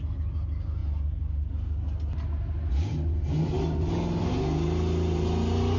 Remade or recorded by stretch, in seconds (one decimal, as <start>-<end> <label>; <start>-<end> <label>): 0.0-5.8 recorded

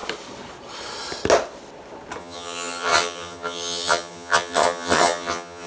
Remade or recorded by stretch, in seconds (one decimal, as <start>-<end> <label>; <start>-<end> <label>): 0.0-2.2 recorded; 2.2-5.7 remade

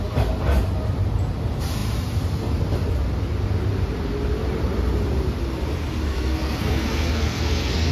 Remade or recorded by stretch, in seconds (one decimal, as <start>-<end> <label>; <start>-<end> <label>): 0.0-6.1 recorded; 6.1-7.9 remade

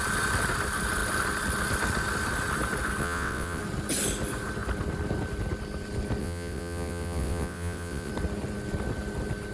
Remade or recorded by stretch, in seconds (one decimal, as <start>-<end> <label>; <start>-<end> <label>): 0.0-3.0 recorded; 3.0-3.6 remade; 3.6-6.2 recorded; 6.2-8.1 remade; 8.1-9.5 recorded

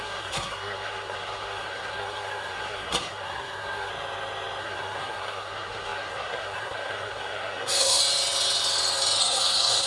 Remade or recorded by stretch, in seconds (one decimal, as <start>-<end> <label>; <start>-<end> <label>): 0.0-3.9 remade; 3.9-4.6 recorded; 4.6-8.0 remade; 8.0-9.2 recorded; 9.2-9.9 remade